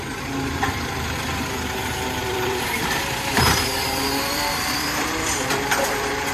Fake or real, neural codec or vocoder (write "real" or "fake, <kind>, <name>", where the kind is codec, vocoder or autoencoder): fake, vocoder, BigVGAN v2